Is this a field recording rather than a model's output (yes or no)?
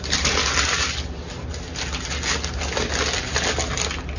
yes